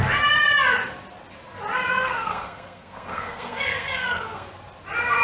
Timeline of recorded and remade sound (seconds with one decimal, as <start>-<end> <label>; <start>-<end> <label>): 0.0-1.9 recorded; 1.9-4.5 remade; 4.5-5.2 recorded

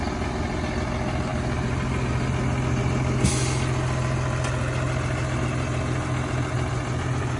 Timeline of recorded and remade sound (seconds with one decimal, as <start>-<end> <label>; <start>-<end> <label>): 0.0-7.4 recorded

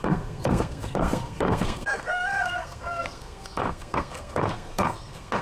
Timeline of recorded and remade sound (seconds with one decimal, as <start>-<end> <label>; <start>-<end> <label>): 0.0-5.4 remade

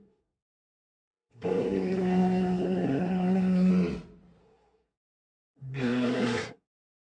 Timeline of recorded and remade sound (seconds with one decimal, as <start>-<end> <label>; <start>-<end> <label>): 0.0-3.7 remade; 3.7-4.4 recorded; 4.4-7.1 remade